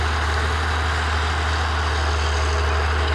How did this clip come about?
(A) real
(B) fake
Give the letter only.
A